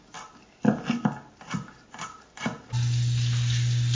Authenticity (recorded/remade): recorded